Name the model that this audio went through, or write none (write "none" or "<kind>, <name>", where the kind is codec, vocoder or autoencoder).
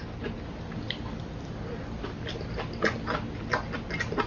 none